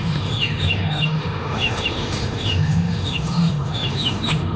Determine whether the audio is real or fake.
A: fake